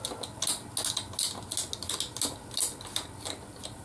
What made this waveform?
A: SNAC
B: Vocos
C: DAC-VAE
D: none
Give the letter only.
D